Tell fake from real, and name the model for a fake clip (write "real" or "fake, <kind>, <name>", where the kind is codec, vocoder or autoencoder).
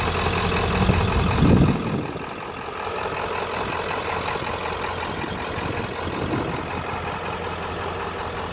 real